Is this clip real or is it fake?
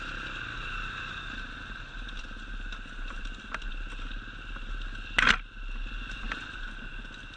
real